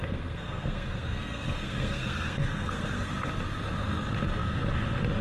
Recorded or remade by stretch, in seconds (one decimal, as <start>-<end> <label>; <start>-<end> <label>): 0.0-3.1 remade; 3.1-5.2 recorded